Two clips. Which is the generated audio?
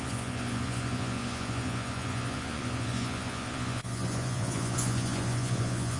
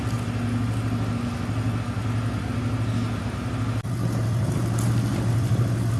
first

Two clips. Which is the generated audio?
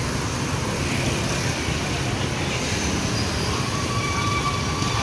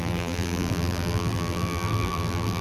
second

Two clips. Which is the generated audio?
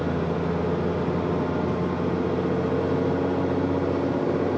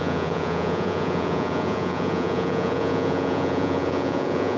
second